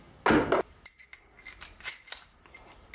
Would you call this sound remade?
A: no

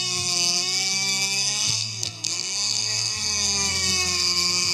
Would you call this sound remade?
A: yes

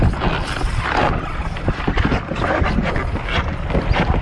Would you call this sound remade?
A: no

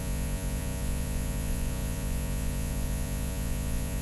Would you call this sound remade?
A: yes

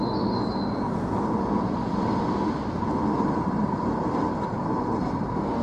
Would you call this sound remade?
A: no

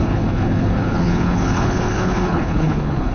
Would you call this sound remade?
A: yes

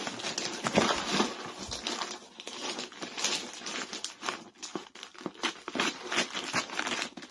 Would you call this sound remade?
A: no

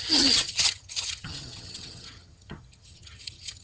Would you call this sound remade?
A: yes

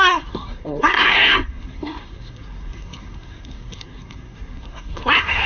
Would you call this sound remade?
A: yes